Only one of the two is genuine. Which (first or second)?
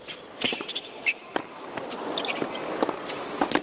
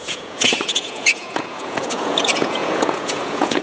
first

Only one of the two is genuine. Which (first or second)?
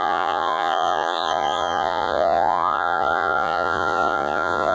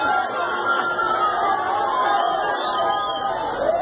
second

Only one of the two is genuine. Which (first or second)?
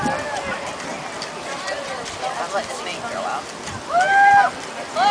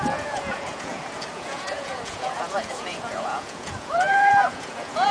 first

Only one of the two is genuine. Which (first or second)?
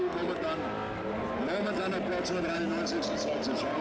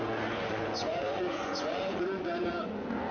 first